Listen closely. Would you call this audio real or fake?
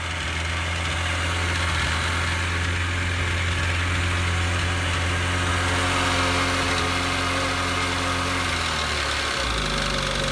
real